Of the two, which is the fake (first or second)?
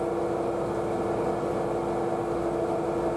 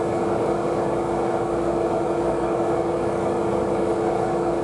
second